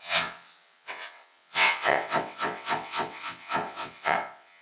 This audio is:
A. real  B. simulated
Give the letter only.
B